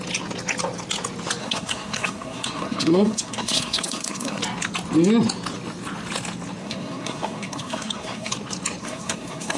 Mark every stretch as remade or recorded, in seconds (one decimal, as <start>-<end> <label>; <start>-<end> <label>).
0.0-1.4 recorded; 1.4-4.4 remade; 4.4-6.6 recorded; 6.6-8.3 remade; 8.3-8.8 recorded; 8.8-9.6 remade